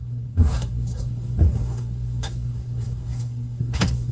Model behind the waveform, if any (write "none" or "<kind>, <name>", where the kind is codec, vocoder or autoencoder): codec, SNAC